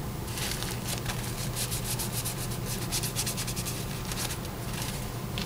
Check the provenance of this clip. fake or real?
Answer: real